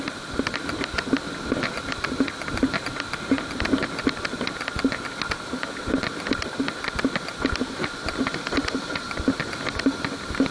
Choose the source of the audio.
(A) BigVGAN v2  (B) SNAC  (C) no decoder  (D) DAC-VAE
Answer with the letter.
C